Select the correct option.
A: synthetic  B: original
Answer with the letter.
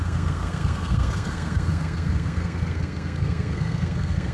A